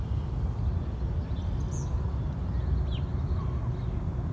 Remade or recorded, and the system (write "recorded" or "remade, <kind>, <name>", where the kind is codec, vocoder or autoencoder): recorded